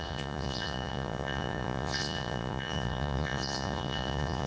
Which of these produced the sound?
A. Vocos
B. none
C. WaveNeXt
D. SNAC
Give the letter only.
A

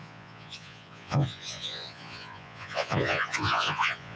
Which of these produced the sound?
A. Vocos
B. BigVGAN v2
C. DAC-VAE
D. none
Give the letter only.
A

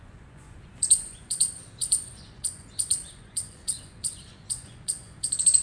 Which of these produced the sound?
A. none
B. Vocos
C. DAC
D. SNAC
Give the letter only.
B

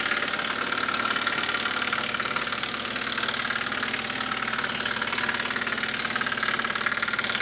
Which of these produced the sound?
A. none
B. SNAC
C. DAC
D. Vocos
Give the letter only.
A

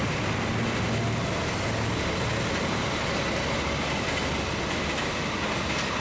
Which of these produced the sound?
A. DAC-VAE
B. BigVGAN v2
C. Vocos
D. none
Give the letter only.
D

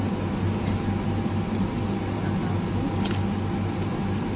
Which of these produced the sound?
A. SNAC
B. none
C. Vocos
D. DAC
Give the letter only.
B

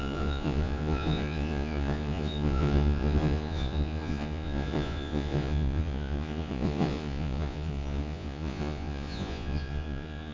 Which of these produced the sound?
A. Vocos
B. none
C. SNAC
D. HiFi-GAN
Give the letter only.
A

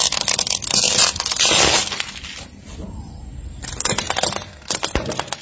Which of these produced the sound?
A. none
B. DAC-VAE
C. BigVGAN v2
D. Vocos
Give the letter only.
A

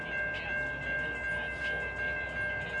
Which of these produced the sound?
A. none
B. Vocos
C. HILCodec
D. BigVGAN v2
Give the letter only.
A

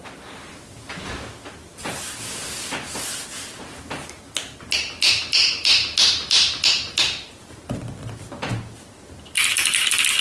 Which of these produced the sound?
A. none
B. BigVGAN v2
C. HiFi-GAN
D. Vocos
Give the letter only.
A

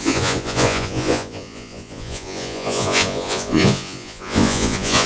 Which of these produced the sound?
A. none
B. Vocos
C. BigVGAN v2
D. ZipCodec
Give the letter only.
B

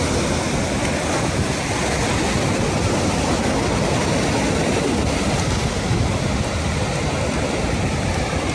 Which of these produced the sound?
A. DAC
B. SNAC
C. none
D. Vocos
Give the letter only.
C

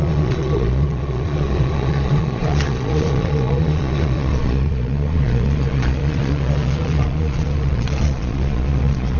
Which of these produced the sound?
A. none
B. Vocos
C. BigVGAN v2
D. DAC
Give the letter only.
B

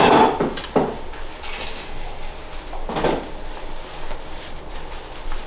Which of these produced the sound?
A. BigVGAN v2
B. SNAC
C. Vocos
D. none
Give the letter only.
D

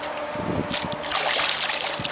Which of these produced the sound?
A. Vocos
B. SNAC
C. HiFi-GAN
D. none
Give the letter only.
D